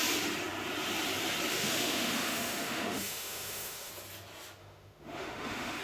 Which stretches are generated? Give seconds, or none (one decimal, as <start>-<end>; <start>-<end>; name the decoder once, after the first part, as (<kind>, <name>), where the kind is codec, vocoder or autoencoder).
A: 1.5-3.9 (autoencoder, DAC-VAE); 4.6-5.8